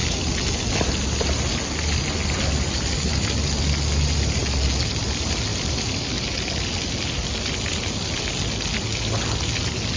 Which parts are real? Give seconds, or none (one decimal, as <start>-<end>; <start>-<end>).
0.0-10.0